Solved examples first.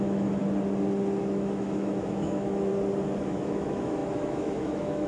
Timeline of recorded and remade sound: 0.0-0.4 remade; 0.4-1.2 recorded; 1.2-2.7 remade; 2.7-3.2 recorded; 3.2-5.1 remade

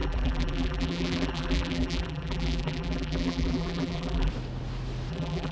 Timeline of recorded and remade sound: 0.0-4.3 remade; 4.3-5.1 recorded; 5.1-5.5 remade

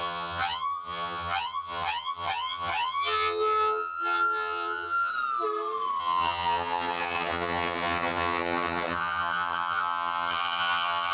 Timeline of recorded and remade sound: 0.0-5.1 remade; 5.1-6.0 recorded; 6.0-11.1 remade

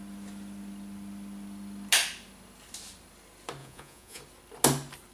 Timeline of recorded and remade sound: 0.0-3.6 recorded; 3.6-4.2 remade; 4.2-5.1 recorded